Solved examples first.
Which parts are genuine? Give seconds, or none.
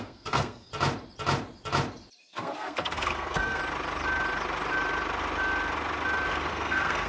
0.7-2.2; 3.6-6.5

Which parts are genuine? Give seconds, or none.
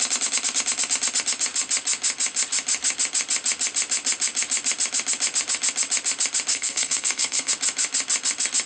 0.0-6.5; 7.5-8.7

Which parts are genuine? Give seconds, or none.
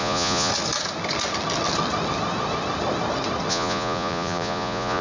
0.5-3.5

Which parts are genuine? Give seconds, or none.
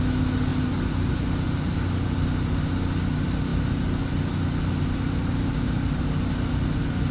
0.0-7.1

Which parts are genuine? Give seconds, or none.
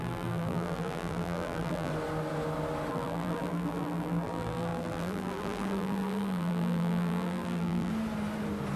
1.9-2.9; 7.9-8.8